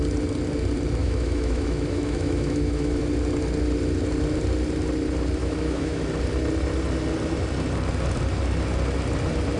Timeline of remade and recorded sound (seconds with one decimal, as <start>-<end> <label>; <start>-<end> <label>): 0.0-1.0 recorded; 1.0-3.0 remade; 3.0-5.4 recorded; 5.4-6.0 remade; 6.0-9.6 recorded